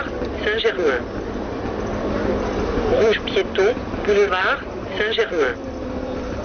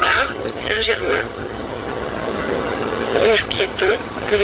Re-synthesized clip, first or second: second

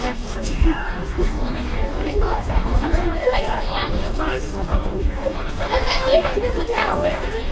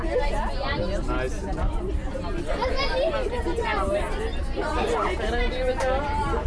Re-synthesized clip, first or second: first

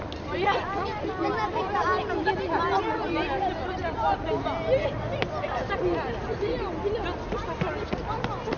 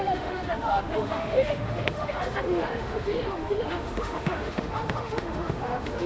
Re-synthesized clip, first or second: second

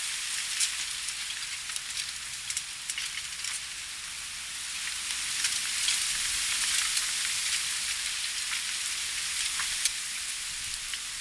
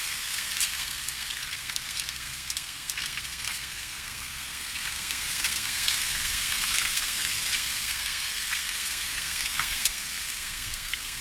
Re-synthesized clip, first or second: second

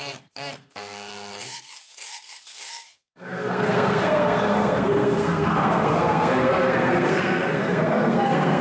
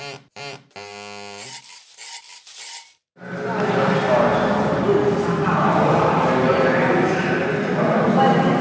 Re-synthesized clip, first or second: first